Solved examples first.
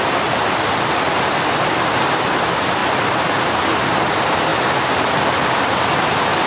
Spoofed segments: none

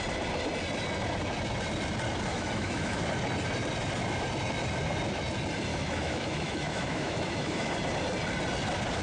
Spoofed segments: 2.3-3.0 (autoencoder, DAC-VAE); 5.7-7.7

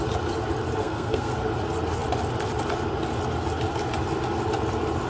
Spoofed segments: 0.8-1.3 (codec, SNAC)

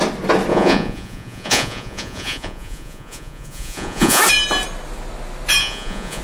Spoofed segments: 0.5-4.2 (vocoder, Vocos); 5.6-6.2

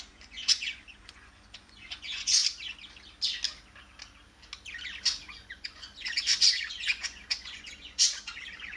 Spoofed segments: 0.0-2.4 (vocoder, Vocos); 5.2-8.8

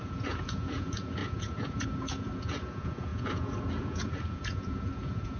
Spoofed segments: 0.0-5.4 (vocoder, Vocos)

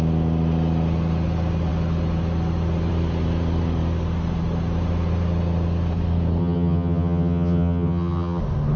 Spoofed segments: 6.4-8.4 (vocoder, HiFi-GAN)